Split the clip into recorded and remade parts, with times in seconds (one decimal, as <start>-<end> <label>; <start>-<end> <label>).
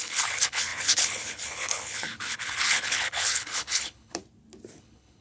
0.0-4.2 remade; 4.2-4.8 recorded; 4.8-5.2 remade